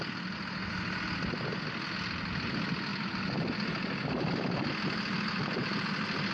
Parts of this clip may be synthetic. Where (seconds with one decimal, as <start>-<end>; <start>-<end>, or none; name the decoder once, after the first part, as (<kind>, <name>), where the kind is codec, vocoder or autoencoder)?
none